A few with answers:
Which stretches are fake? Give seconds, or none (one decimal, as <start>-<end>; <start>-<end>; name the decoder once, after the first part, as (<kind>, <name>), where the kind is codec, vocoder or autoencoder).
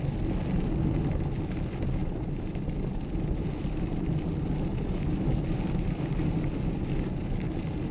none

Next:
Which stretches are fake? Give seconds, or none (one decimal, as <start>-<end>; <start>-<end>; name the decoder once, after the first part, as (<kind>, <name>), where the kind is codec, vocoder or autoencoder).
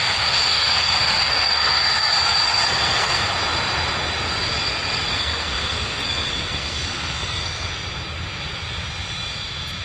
0.5-3.3 (codec, SNAC); 5.1-7.7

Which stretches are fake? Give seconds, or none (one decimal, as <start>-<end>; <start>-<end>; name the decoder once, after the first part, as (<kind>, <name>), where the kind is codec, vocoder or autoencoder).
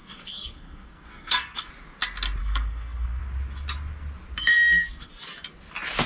0.0-1.7 (codec, SNAC); 2.4-3.2; 4.4-5.1